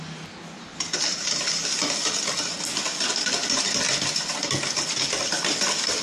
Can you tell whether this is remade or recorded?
recorded